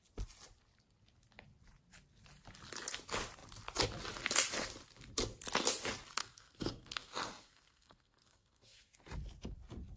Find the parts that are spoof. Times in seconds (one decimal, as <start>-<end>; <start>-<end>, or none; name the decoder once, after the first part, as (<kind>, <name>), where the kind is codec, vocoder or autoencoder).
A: 6.2-9.0 (codec, SNAC)